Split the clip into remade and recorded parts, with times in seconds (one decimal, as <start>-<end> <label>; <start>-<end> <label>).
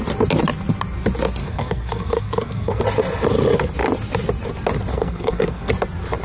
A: 0.0-1.4 recorded; 1.4-2.8 remade; 2.8-4.9 recorded; 4.9-5.7 remade; 5.7-6.2 recorded